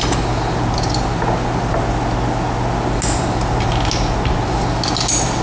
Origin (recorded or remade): recorded